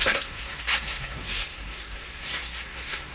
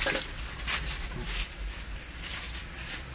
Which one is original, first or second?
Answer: second